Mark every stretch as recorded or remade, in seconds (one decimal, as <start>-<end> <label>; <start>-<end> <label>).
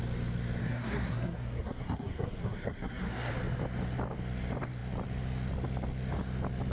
0.0-0.6 recorded; 0.6-3.3 remade; 3.3-6.7 recorded